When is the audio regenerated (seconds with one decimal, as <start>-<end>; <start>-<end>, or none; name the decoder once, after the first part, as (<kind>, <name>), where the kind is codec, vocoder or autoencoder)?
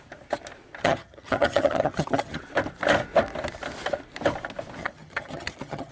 0.8-2.4 (vocoder, HiFi-GAN); 4.8-5.9